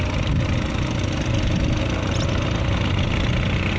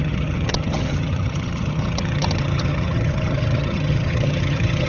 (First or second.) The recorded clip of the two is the first